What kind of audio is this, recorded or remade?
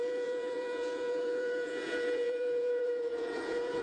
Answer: remade